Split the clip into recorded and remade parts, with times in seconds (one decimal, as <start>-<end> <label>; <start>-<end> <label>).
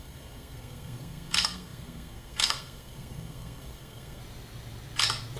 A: 0.0-4.2 remade; 4.2-5.4 recorded